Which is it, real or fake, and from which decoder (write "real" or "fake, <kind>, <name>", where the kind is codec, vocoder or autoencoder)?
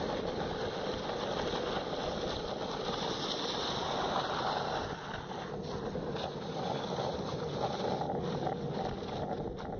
real